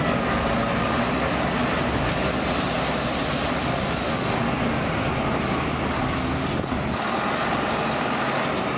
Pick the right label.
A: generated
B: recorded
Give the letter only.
B